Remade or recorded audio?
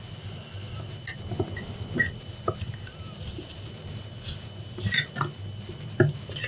recorded